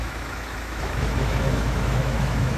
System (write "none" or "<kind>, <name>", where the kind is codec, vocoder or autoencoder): autoencoder, DAC-VAE